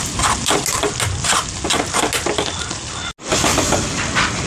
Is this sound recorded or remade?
recorded